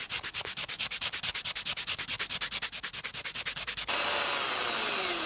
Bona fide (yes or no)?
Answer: yes